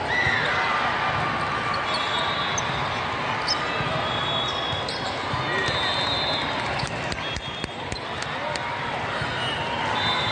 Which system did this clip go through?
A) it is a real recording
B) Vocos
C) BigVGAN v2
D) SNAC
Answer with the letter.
A